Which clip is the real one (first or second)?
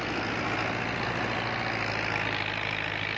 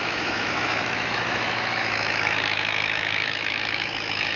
first